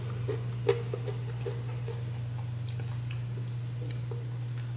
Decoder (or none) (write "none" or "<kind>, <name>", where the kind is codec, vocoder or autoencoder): none